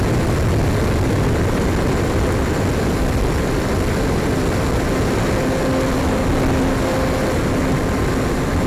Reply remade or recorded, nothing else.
recorded